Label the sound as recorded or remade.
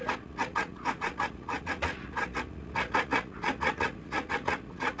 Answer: remade